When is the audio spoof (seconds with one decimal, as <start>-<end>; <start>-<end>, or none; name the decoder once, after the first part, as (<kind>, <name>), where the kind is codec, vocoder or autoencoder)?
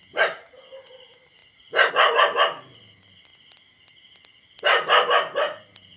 none